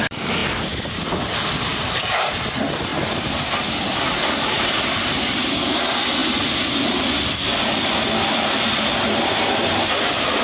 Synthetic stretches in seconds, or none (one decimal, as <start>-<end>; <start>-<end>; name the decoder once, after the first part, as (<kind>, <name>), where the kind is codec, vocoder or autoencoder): 0.0-2.9 (vocoder, BigVGAN v2); 3.6-6.2; 9.8-10.4